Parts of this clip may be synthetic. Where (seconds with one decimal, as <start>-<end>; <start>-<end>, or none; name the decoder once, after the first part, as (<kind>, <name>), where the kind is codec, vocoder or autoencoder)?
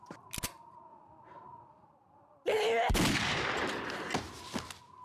0.9-2.9 (vocoder, BigVGAN v2)